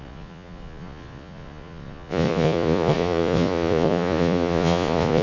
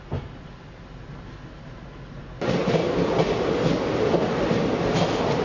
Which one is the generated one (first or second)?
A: first